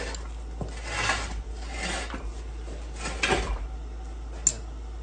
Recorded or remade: recorded